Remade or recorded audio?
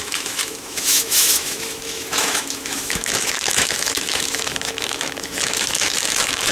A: remade